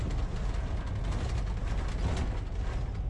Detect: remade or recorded recorded